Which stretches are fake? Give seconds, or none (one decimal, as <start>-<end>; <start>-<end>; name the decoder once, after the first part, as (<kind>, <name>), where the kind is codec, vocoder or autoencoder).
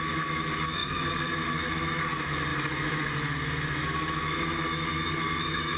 0.0-5.8 (autoencoder, DAC-VAE)